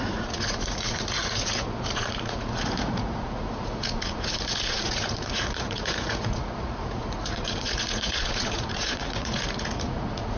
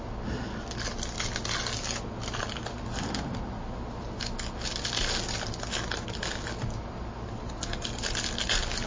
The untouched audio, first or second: second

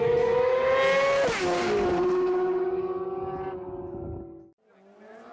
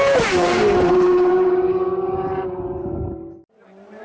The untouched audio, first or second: first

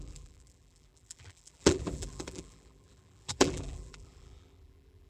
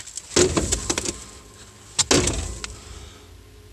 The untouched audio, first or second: second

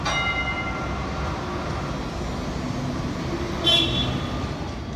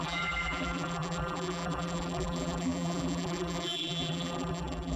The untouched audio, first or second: first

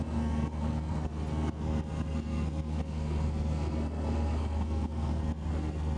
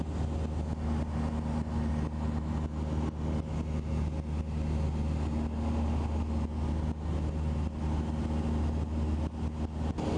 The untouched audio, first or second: second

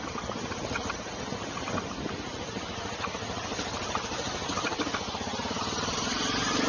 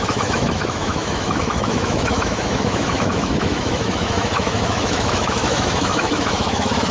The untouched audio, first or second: first